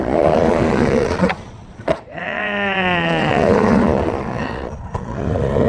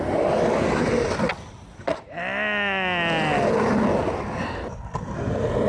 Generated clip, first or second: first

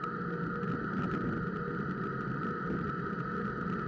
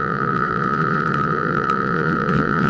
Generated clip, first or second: second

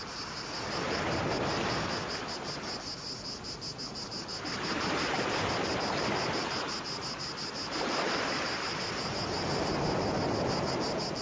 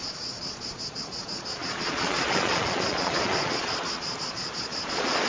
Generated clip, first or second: second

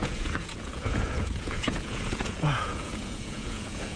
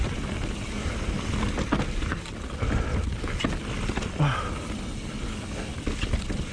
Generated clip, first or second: first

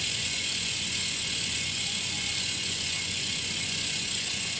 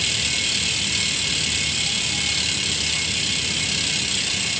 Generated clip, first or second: first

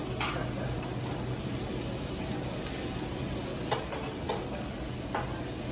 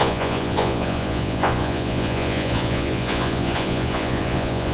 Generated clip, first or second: second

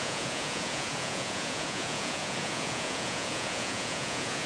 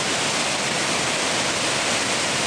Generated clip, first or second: first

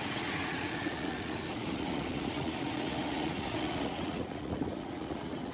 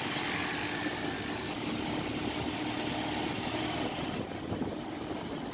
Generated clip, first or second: first